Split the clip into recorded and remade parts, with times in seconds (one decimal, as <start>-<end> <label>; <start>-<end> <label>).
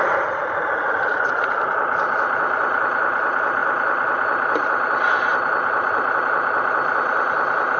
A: 0.0-7.8 recorded